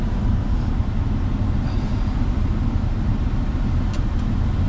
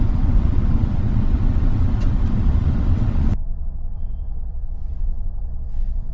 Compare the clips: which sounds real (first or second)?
first